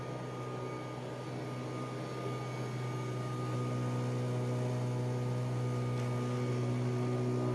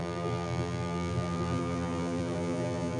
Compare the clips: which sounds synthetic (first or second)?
second